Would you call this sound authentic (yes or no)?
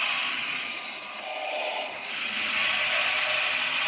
yes